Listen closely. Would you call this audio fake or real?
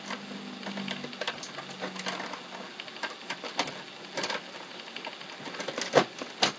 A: real